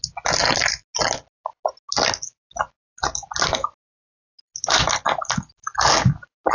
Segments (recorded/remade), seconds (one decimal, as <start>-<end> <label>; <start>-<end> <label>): 0.0-6.5 recorded